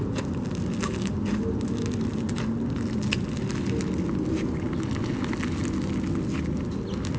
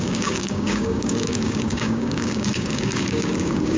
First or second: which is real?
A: first